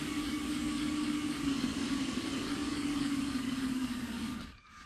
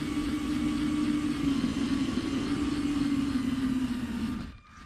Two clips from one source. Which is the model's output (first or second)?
first